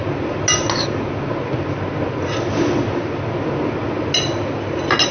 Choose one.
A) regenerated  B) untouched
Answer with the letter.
B